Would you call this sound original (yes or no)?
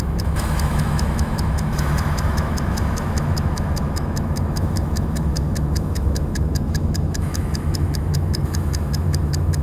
no